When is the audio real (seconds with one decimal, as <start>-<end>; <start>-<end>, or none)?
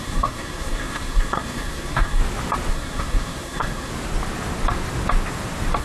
2.2-2.7; 3.9-5.8